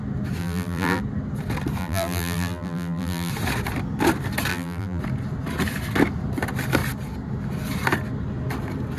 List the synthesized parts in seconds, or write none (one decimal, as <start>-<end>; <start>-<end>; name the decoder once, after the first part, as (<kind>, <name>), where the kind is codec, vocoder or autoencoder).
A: 0.4-1.0 (vocoder, BigVGAN v2); 1.8-3.3; 4.5-5.0